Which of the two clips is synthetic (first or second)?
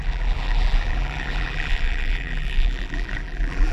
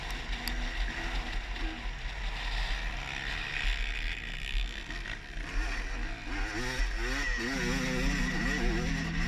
first